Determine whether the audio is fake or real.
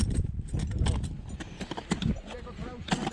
real